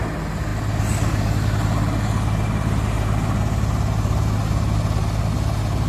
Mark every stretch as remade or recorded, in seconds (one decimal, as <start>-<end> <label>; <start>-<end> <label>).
0.0-5.9 recorded